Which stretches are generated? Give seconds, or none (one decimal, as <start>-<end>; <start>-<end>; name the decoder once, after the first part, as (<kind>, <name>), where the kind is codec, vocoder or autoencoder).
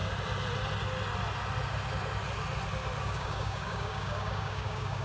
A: 3.0-5.0 (codec, DAC)